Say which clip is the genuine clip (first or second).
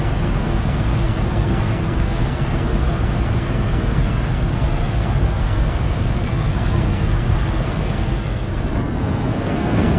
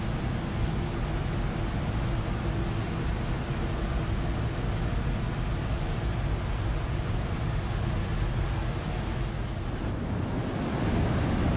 second